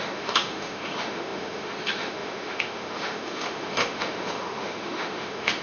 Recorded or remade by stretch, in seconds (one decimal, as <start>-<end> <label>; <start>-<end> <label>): 0.0-5.6 remade